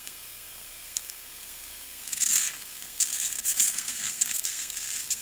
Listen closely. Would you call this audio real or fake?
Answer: fake